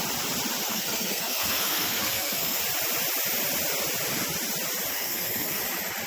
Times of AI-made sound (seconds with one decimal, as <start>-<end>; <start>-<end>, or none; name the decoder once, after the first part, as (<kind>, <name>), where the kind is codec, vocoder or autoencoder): 0.6-2.6 (codec, SNAC); 4.9-5.6